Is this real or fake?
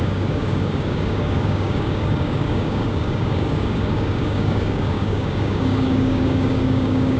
fake